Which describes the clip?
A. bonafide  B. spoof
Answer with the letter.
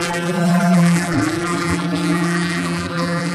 B